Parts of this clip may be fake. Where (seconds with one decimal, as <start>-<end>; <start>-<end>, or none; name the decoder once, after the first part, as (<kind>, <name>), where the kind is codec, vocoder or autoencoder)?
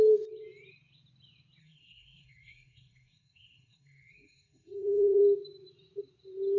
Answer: 1.6-5.2 (codec, SNAC)